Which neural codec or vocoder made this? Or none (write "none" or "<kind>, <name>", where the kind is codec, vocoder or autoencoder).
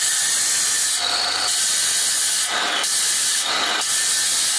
none